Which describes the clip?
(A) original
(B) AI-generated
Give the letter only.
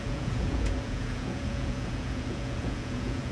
B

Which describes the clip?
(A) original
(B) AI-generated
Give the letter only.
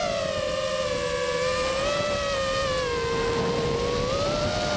A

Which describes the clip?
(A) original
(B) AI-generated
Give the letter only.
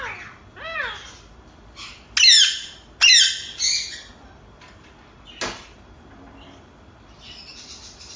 A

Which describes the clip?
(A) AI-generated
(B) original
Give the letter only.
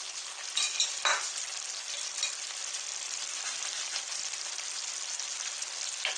B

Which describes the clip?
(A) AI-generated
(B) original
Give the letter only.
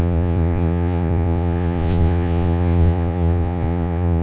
A